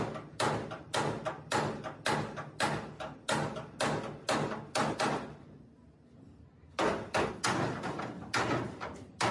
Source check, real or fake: real